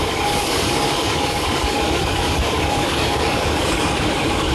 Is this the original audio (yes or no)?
no